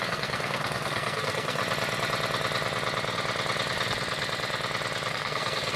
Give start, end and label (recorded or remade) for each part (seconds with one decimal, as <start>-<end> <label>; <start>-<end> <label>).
0.0-1.6 remade; 1.6-5.1 recorded; 5.1-5.8 remade